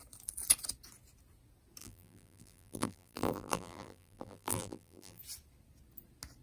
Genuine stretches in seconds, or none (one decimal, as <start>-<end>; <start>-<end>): 0.0-1.8; 5.2-6.4